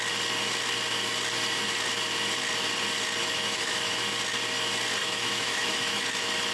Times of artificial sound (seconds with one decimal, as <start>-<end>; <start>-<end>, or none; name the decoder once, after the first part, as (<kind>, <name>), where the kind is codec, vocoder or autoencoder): 3.2-4.0 (autoencoder, DAC-VAE); 5.0-6.0